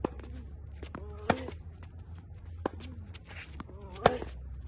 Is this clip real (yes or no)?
yes